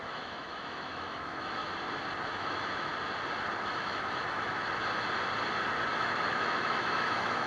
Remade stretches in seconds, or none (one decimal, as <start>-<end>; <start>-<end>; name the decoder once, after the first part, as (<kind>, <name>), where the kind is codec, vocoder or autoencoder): 0.0-1.6 (autoencoder, DAC-VAE); 2.2-2.9; 3.6-4.6; 5.9-7.5